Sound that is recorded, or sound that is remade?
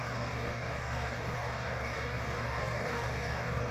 remade